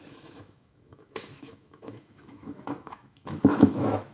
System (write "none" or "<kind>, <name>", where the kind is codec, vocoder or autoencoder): autoencoder, DAC-VAE